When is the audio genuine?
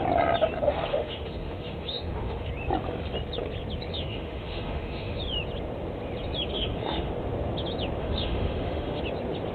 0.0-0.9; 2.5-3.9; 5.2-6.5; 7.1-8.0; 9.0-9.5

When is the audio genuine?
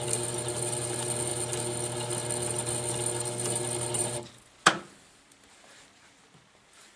0.0-7.0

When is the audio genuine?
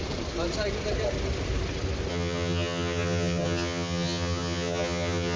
0.0-2.1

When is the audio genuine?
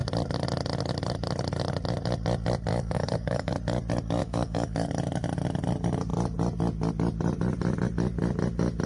0.0-2.7; 3.5-4.2; 4.9-8.9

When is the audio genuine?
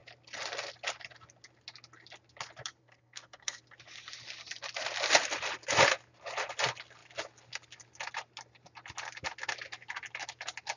0.0-2.8; 3.6-10.8